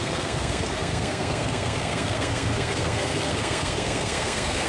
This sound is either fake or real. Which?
fake